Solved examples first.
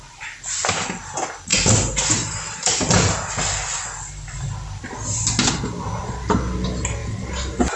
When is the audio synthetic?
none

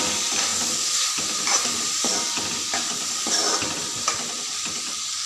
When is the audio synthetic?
none